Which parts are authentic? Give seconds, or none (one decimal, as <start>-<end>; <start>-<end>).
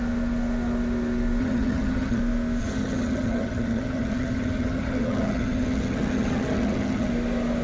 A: 0.0-1.4; 2.2-2.6; 7.1-7.6